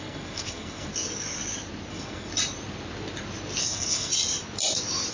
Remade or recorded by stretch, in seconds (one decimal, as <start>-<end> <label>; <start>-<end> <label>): 0.0-0.9 remade; 0.9-1.9 recorded; 1.9-2.3 remade; 2.3-3.6 recorded; 3.6-4.1 remade; 4.1-5.1 recorded